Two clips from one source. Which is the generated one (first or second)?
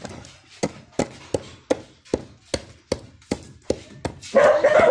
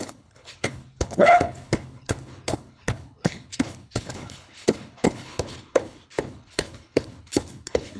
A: second